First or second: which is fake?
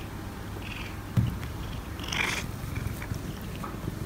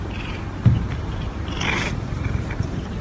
second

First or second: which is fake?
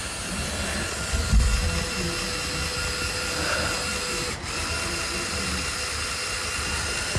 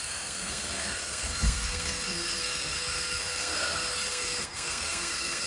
second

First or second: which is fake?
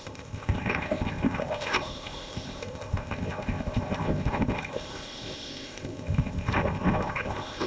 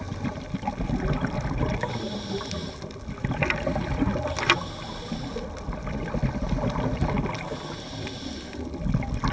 first